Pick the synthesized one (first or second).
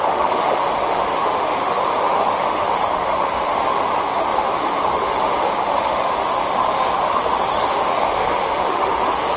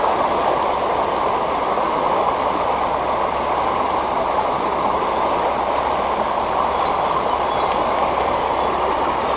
first